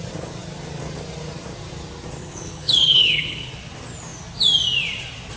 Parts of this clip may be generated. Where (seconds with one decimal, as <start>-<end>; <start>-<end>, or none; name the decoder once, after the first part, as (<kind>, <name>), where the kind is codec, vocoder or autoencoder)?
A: 2.2-3.5 (codec, HILCodec)